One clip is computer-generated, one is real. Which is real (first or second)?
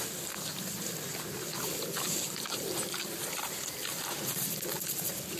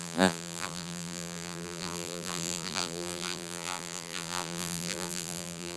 first